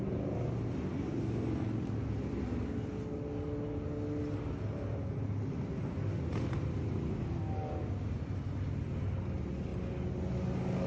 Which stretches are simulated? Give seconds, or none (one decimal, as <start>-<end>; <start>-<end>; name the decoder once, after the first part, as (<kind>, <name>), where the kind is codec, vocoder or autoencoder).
none